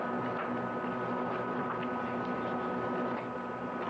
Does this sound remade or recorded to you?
recorded